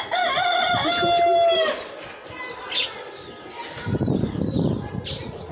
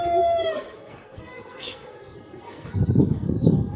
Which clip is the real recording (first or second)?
first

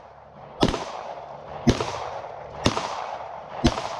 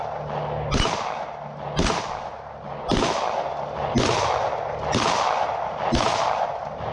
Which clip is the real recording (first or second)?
second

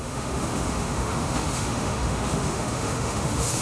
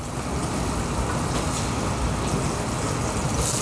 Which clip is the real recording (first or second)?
second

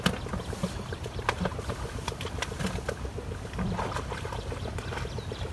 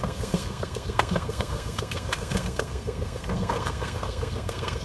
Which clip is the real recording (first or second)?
first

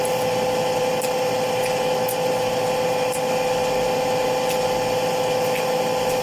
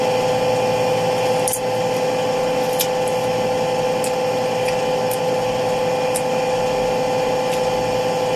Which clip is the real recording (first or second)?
second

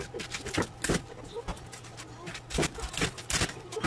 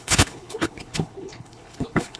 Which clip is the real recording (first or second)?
first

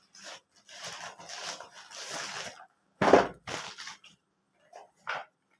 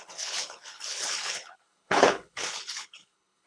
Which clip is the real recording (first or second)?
first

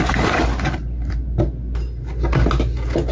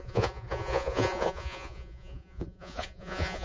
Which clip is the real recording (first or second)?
first